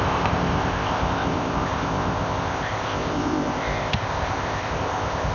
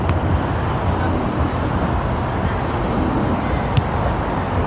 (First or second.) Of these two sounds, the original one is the second